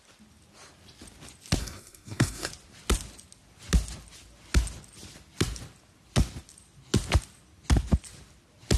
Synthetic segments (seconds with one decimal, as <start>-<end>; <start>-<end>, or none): 1.6-2.5